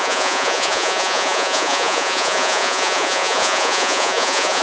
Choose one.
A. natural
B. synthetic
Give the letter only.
B